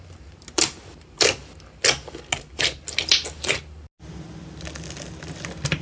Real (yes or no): yes